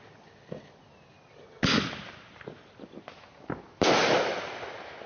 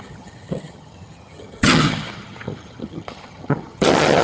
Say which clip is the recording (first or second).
first